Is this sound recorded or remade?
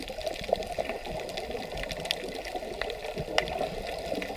recorded